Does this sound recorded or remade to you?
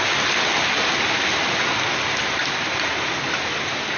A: recorded